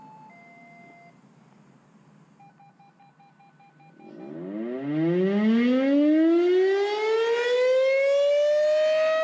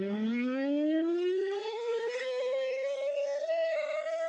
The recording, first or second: first